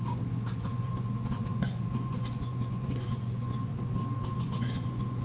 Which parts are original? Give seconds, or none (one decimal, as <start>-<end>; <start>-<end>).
3.7-4.4